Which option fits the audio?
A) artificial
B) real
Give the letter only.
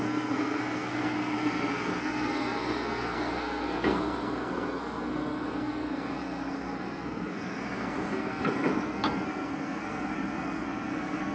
A